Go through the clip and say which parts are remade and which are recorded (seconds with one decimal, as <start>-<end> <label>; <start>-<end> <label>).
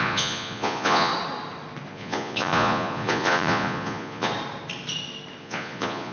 0.0-1.1 remade; 1.1-1.9 recorded; 1.9-4.3 remade; 4.3-5.4 recorded; 5.4-6.1 remade